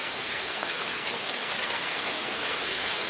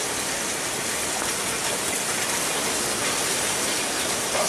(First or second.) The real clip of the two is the second